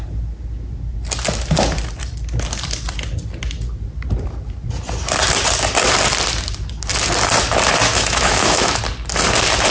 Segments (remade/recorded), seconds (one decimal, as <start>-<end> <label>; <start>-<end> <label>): 0.0-7.9 recorded; 7.9-8.8 remade; 8.8-9.7 recorded